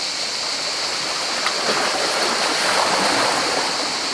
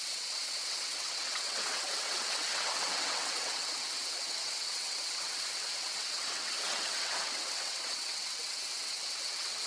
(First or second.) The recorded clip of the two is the first